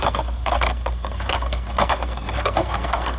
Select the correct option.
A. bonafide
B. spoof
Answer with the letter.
B